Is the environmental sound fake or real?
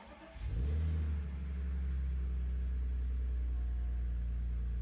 real